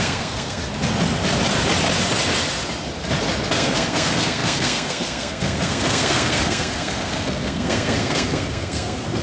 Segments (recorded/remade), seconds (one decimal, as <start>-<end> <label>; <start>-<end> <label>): 0.0-0.6 remade; 0.6-3.5 recorded; 3.5-9.2 remade